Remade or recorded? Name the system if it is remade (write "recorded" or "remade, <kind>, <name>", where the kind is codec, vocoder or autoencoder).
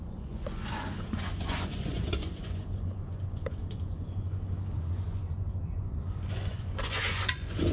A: remade, vocoder, Vocos